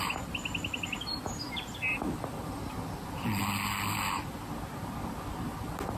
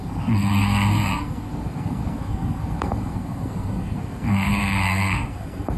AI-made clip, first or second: second